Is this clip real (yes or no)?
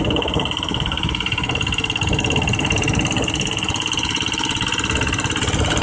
yes